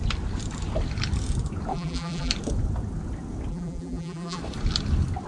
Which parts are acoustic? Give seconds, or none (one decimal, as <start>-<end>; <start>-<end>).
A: 0.0-1.7; 2.3-3.5; 4.4-5.3